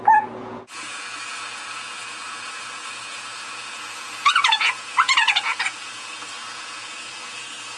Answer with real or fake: fake